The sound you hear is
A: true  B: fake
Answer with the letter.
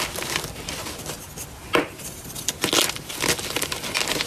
A